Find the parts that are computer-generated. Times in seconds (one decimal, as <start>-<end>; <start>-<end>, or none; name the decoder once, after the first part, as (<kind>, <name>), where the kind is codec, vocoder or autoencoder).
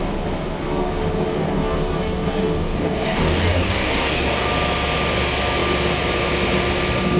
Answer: 1.3-4.5 (codec, DAC)